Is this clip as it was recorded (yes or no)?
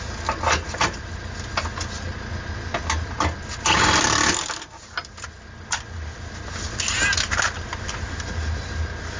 yes